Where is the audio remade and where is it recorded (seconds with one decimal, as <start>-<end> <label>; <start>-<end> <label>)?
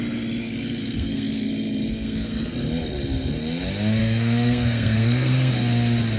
0.0-0.8 recorded; 0.8-1.5 remade; 1.5-1.9 recorded; 1.9-2.5 remade; 2.5-4.0 recorded; 4.0-5.5 remade; 5.5-6.2 recorded